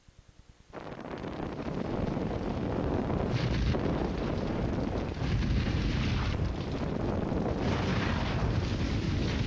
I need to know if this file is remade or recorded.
remade